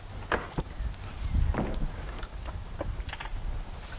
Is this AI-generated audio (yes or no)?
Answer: no